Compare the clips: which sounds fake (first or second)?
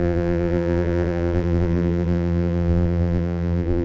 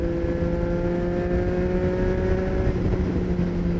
first